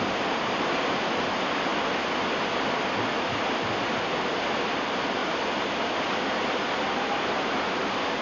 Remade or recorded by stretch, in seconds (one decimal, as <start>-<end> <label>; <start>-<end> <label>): 0.0-8.2 recorded